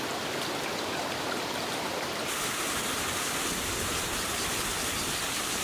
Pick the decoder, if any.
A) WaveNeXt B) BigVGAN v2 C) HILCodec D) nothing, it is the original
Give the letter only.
B